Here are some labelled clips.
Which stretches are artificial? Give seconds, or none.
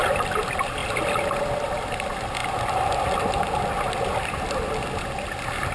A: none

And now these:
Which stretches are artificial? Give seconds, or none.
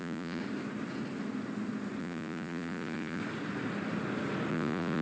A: 0.0-0.4 (vocoder, Vocos); 2.0-3.2; 4.5-5.0